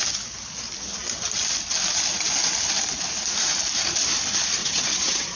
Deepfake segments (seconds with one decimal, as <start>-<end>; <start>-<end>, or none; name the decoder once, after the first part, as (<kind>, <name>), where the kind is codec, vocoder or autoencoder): 4.6-5.4 (vocoder, WaveNeXt)